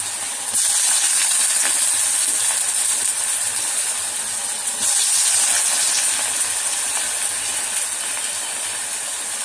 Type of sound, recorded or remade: recorded